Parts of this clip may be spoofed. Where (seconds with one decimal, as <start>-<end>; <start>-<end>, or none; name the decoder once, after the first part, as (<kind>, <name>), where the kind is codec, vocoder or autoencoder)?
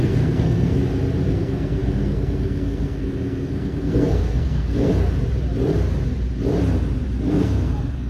0.0-0.8 (codec, SNAC); 1.3-4.9; 7.3-8.1